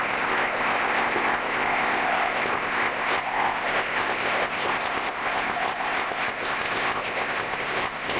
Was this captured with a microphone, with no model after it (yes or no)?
no